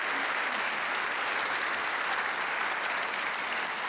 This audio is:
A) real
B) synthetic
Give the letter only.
A